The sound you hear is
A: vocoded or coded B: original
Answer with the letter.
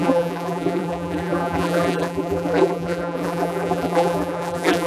A